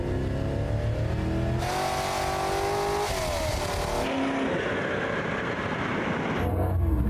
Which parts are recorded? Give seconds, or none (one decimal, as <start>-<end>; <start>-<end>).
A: 0.0-6.5